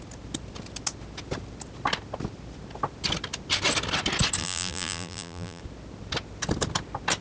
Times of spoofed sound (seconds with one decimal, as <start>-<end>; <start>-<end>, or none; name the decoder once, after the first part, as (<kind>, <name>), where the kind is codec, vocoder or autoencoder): 4.4-5.6 (vocoder, BigVGAN v2)